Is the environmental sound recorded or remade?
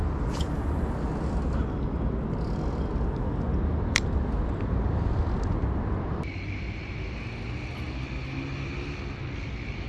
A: recorded